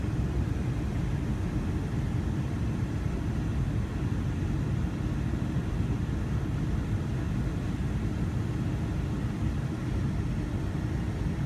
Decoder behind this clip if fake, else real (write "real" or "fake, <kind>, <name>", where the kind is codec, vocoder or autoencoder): real